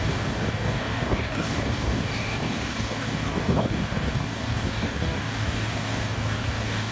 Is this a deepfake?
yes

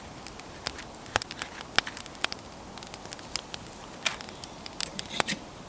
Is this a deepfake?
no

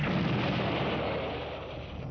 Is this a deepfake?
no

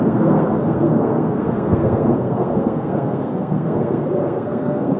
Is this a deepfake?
yes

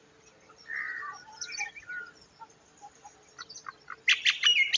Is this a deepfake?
no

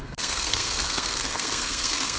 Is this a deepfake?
yes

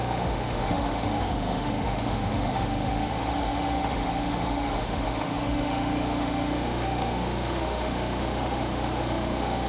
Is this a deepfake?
yes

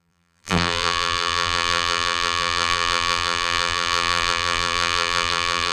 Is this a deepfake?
yes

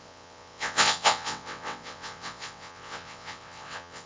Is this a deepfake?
yes